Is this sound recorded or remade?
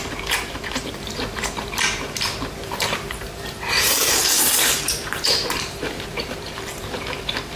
remade